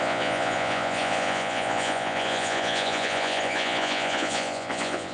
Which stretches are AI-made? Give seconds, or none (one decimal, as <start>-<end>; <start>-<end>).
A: 0.0-5.1